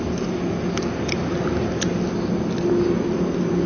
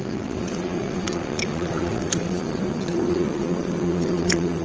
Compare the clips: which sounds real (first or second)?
first